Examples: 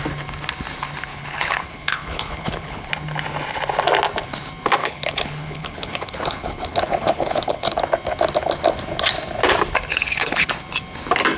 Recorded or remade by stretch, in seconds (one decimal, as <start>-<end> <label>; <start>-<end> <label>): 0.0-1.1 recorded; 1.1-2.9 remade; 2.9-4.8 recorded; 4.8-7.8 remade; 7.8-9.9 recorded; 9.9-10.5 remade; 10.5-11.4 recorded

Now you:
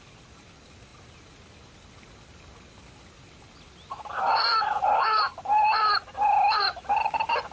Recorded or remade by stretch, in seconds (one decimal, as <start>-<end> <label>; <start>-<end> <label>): 0.0-7.5 recorded

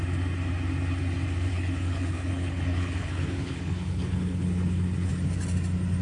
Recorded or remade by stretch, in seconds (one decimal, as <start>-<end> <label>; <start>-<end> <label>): 0.0-1.5 recorded; 1.5-5.1 remade; 5.1-6.0 recorded

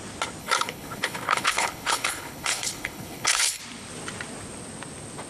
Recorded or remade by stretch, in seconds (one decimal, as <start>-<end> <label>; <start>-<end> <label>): 0.0-0.4 recorded; 0.4-3.6 remade; 3.6-5.3 recorded